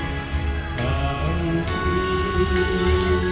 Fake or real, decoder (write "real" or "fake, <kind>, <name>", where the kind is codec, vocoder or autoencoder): real